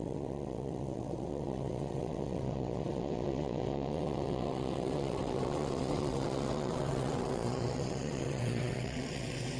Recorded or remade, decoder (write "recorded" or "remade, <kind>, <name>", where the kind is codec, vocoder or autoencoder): remade, vocoder, WaveNeXt